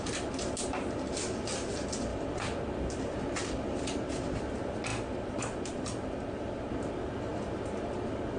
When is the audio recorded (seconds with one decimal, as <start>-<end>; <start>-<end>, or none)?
0.0-2.1; 3.8-4.9; 6.7-8.4